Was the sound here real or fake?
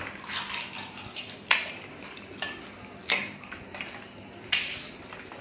real